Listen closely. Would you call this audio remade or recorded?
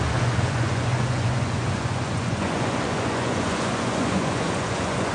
remade